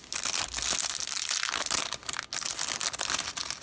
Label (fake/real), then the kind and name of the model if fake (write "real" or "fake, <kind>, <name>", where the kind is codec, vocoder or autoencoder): real